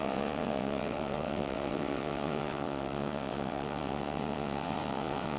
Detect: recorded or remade remade